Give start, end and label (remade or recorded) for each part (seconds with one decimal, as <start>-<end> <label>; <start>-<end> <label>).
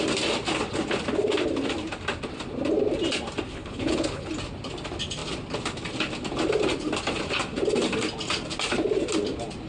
0.0-3.5 recorded; 3.5-4.3 remade; 4.3-9.7 recorded